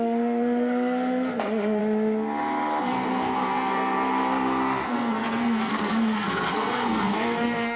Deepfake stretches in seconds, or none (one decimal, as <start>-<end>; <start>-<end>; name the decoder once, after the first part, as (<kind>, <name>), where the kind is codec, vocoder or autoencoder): 0.0-1.8 (codec, SNAC); 2.8-7.8